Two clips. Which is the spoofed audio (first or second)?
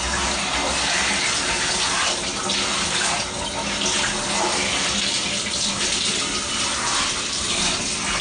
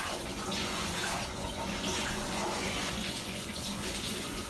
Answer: second